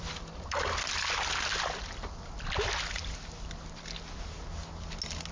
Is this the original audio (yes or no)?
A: yes